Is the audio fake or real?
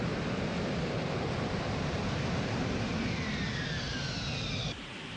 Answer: real